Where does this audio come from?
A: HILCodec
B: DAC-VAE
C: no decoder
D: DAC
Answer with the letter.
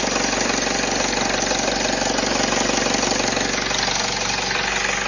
C